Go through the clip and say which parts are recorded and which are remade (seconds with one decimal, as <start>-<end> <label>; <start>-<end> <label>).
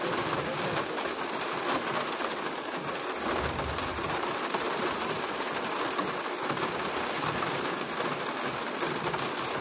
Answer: 0.0-3.9 recorded; 3.9-5.2 remade; 5.2-9.6 recorded